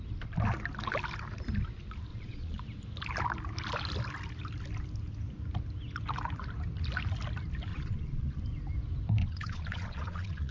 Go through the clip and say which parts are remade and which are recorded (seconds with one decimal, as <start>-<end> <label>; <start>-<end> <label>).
0.0-2.1 recorded; 2.1-2.6 remade; 2.6-7.7 recorded; 7.7-8.4 remade; 8.4-9.2 recorded; 9.2-10.5 remade